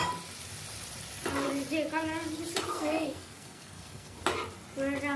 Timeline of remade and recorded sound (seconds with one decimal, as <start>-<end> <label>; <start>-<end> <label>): 0.0-2.7 recorded; 2.7-4.2 remade; 4.2-5.2 recorded